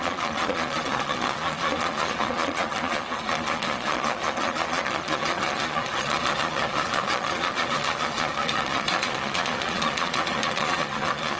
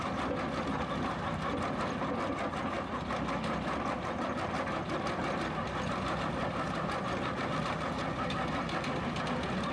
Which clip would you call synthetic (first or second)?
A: first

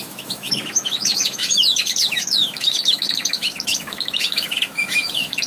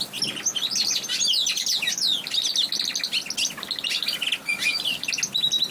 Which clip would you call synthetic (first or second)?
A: first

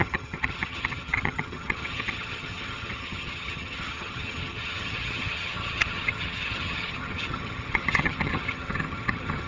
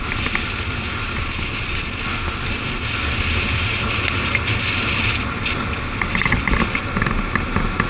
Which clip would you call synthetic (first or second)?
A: first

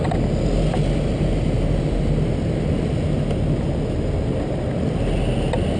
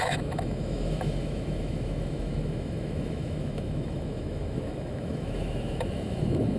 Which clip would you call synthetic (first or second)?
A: second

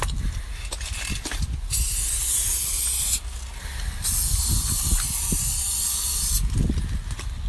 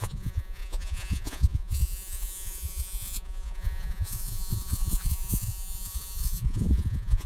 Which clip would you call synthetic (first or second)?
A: second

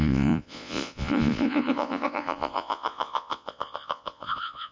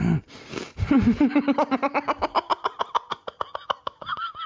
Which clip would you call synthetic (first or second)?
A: first